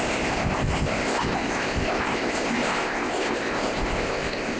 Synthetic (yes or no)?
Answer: yes